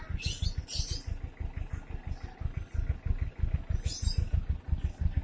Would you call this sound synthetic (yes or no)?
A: no